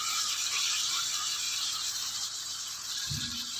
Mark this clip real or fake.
fake